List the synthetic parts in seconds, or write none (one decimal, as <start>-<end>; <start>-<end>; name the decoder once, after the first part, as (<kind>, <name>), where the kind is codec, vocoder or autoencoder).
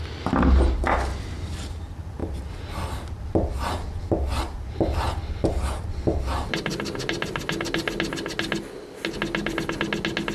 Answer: none